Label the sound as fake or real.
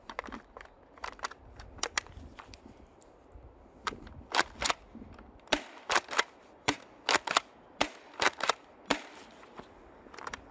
real